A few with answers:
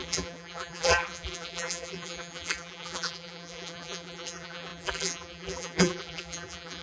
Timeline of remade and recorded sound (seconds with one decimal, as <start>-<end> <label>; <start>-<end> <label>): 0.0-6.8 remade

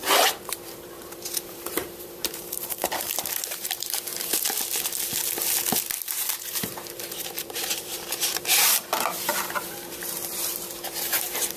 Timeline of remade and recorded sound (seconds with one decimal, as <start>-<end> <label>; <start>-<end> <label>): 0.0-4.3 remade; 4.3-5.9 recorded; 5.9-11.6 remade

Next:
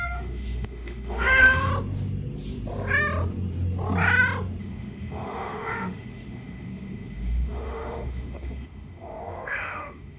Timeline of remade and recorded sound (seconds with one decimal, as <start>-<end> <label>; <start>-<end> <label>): 0.0-1.7 remade; 1.7-4.6 recorded; 4.6-10.2 remade

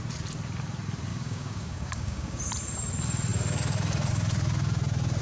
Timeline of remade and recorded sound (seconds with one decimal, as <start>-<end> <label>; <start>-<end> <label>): 0.0-1.1 recorded; 1.1-2.4 remade; 2.4-5.2 recorded